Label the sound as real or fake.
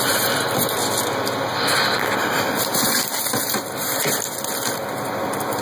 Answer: real